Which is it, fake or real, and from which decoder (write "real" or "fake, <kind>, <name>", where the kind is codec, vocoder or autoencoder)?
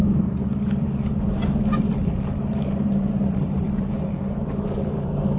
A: fake, vocoder, BigVGAN v2